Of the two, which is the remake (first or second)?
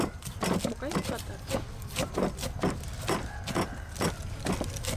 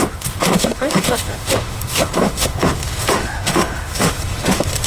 second